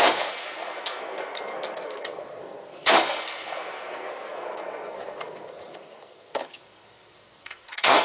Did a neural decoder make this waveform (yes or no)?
yes